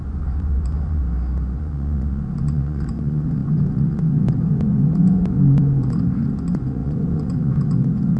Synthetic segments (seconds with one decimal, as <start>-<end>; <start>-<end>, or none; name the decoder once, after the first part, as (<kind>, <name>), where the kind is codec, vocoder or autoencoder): 0.0-1.0 (vocoder, Vocos); 1.6-8.2